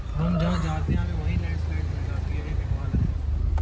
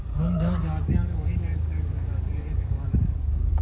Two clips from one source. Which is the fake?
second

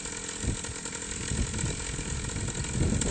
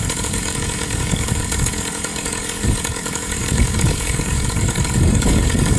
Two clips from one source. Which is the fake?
second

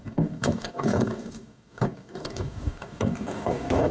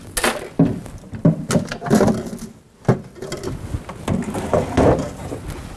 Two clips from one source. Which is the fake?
first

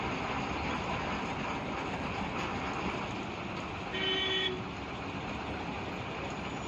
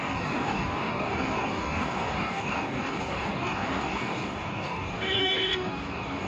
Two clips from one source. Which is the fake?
second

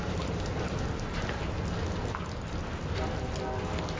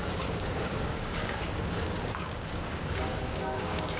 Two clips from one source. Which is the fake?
second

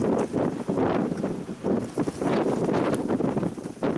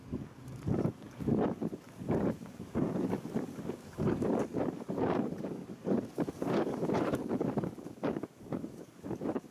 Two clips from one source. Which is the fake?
second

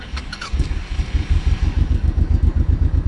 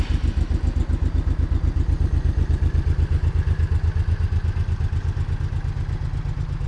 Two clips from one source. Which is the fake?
first